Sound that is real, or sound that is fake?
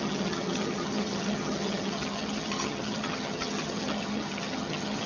fake